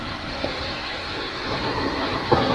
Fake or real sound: fake